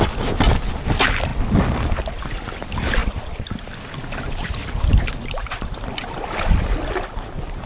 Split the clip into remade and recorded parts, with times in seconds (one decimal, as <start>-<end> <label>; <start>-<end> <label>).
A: 0.0-3.0 recorded; 3.0-3.7 remade; 3.7-5.4 recorded; 5.4-6.2 remade; 6.2-7.7 recorded